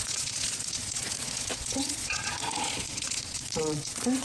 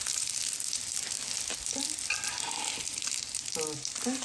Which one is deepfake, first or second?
first